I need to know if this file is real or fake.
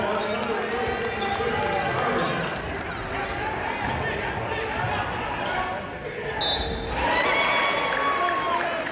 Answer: real